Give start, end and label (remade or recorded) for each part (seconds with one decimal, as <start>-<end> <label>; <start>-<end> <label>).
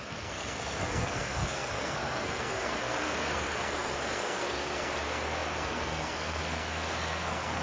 0.0-7.6 remade